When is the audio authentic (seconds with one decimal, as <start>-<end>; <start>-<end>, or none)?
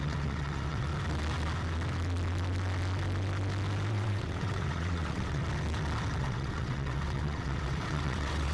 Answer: 0.9-3.9; 5.4-6.2